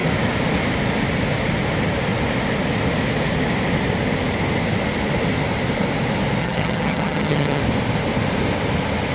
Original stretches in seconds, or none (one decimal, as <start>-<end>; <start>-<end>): 0.0-6.4; 7.6-9.1